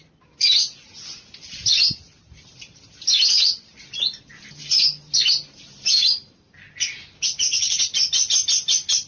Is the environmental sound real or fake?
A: real